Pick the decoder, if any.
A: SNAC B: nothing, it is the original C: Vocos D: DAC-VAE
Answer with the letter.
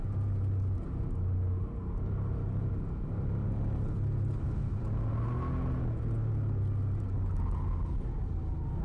B